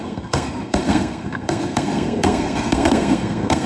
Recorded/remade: remade